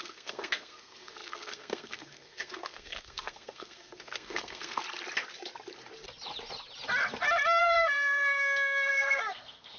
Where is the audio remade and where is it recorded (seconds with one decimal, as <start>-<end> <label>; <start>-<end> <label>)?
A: 0.0-4.8 remade; 4.8-7.6 recorded; 7.6-9.8 remade

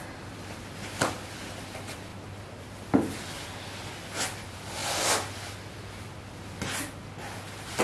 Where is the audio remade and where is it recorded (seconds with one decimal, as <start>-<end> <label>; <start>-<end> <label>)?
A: 0.0-7.8 recorded

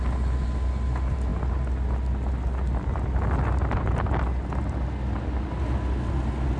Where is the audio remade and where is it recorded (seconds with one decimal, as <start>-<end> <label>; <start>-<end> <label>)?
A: 0.0-6.6 recorded